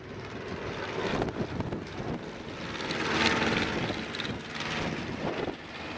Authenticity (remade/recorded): recorded